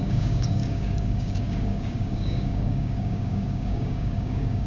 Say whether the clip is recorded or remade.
remade